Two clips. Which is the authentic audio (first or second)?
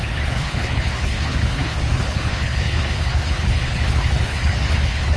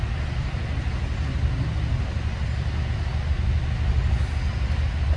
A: second